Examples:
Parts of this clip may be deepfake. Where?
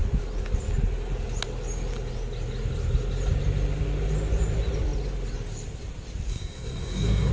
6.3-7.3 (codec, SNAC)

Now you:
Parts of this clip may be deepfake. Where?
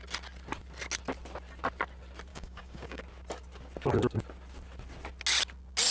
2.3-3.0 (codec, DAC)